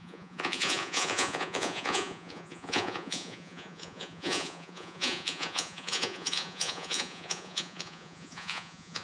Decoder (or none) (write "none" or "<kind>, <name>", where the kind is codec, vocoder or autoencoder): vocoder, Vocos